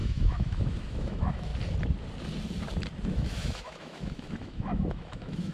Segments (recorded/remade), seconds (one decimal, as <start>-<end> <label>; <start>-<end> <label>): 0.0-1.5 remade; 1.5-3.1 recorded; 3.1-5.5 remade